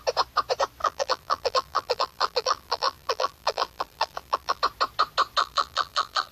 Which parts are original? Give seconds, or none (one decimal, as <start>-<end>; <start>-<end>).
0.0-0.8; 4.6-5.4